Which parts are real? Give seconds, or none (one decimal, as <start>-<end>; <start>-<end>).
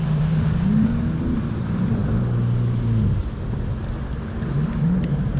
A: 0.9-1.4; 2.0-5.4